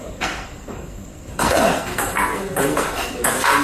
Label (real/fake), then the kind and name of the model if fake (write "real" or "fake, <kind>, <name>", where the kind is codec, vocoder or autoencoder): fake, codec, SNAC